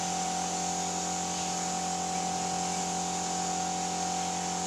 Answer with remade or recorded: recorded